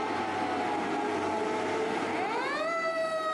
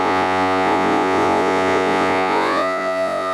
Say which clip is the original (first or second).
first